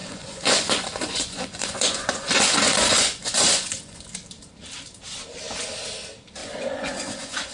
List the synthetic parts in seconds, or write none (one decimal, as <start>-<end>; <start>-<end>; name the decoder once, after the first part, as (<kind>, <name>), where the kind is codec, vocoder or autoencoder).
0.0-4.0 (vocoder, Vocos); 6.4-7.5